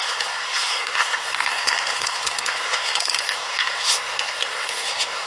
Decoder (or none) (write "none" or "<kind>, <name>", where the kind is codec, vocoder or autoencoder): codec, SNAC